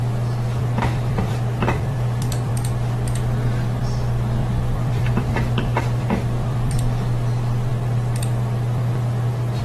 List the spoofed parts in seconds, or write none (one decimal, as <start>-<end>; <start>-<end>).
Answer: 0.6-2.5; 4.4-6.8